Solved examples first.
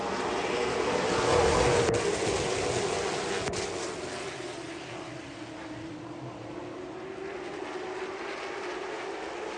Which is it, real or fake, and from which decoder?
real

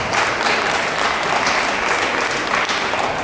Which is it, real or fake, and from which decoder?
real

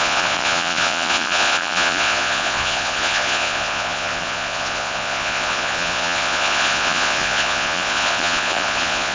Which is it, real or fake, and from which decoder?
fake, vocoder, Vocos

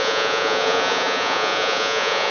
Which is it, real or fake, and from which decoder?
fake, vocoder, Vocos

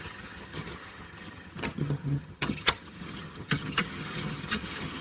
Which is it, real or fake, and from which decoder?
fake, vocoder, HiFi-GAN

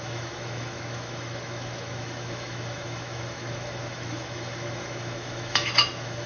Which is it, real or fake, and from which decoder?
fake, autoencoder, DAC-VAE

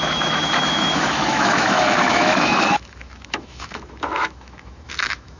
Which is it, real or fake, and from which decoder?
fake, autoencoder, DAC-VAE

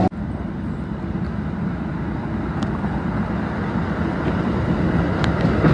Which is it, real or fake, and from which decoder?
real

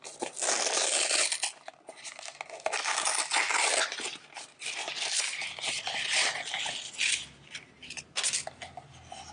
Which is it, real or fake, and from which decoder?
real